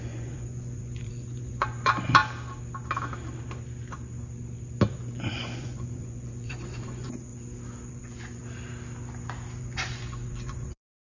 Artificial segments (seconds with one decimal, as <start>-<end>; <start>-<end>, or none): 0.0-2.2; 4.9-7.3; 7.9-8.4; 9.6-11.2